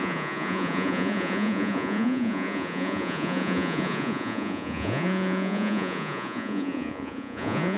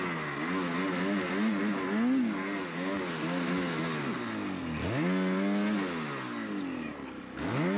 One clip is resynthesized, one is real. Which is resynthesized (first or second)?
first